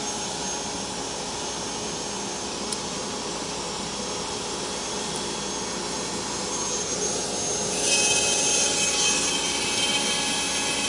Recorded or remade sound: recorded